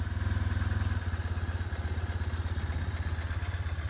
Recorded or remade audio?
recorded